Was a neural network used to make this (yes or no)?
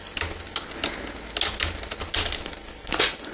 no